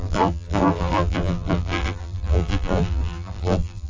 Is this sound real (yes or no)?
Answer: no